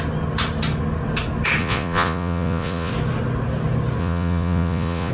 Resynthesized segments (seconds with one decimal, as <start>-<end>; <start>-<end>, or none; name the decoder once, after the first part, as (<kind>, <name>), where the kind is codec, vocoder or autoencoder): 1.6-2.9 (vocoder, Vocos); 4.0-5.1